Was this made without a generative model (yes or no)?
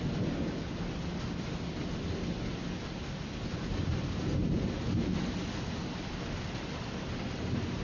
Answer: yes